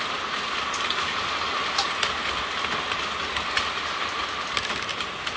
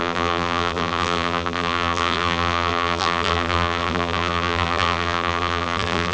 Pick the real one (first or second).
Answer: first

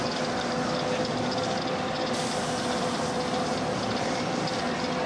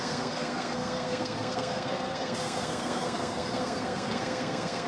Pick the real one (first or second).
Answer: first